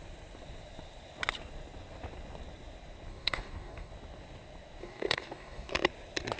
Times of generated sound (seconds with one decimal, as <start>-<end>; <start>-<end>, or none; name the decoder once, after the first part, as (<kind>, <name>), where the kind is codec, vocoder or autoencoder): 3.1-3.9 (codec, DAC); 4.8-5.7